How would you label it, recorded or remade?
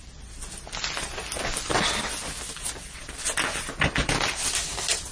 recorded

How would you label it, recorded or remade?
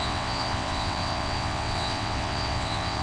remade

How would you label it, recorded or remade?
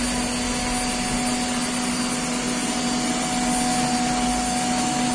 recorded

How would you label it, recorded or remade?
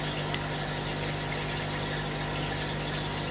recorded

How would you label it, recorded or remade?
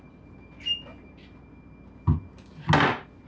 recorded